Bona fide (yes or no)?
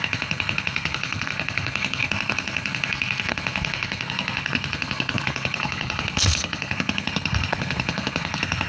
no